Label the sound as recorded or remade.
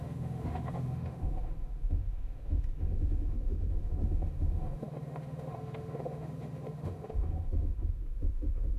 remade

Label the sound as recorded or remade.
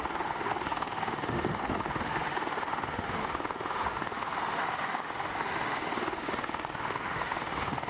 remade